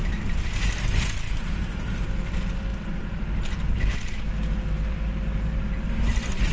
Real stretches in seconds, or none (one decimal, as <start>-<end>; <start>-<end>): 0.0-6.5